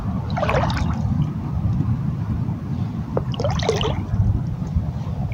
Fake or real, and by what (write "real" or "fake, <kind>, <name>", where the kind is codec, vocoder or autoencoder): real